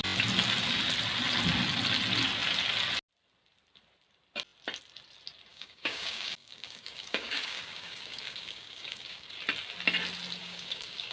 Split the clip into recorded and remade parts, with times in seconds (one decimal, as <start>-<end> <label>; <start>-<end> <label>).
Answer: 0.0-5.5 recorded; 5.5-9.4 remade; 9.4-10.4 recorded; 10.4-11.1 remade